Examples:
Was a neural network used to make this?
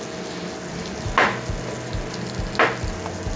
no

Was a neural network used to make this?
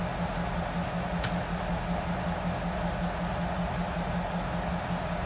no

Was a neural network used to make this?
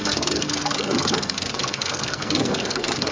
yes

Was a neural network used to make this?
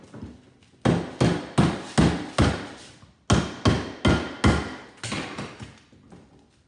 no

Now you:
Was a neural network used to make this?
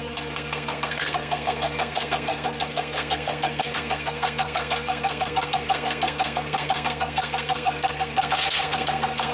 yes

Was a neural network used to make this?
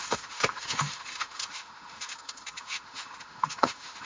yes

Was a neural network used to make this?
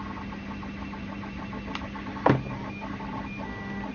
no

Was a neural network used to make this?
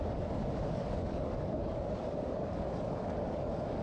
yes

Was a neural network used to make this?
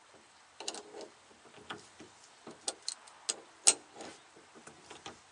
no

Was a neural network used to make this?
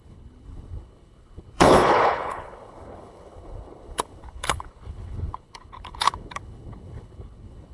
yes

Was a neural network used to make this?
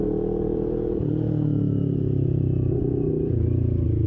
no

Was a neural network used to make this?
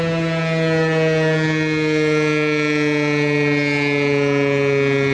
no